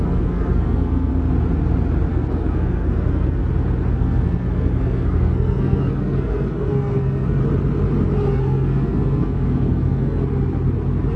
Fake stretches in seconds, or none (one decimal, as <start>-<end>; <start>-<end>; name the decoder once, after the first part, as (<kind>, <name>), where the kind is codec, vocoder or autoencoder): 0.0-1.1 (codec, SNAC); 2.1-3.4; 3.9-7.4; 8.3-10.2